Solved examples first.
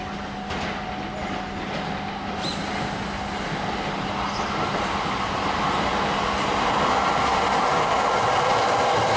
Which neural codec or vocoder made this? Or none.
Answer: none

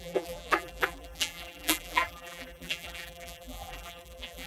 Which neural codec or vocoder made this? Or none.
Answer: vocoder, BigVGAN v2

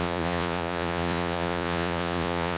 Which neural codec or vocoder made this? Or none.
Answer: vocoder, Vocos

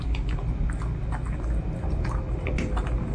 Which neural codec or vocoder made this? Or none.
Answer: none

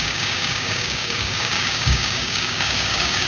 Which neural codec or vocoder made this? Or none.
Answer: codec, DAC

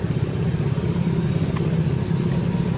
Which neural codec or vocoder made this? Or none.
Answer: none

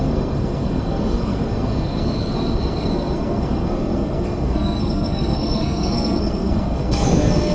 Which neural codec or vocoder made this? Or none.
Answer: codec, SNAC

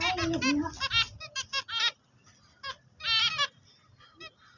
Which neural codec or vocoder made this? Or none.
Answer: none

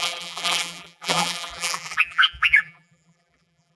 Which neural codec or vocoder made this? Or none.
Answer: vocoder, BigVGAN v2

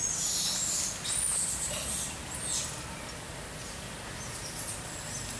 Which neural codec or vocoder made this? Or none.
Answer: none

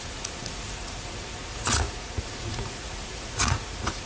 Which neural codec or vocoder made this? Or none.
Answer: vocoder, Vocos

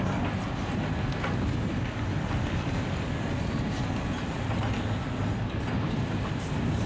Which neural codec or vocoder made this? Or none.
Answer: none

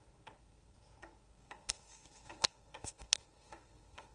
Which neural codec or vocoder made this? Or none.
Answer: codec, SNAC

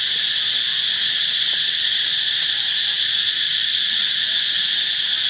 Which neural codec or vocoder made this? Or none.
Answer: none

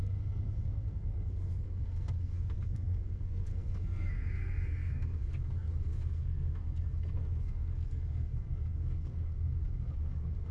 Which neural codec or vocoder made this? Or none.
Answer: codec, SNAC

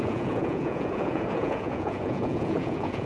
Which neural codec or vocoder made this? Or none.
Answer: vocoder, Vocos